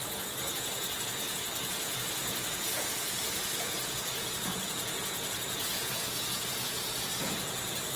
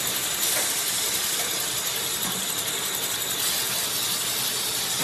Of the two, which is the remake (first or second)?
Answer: first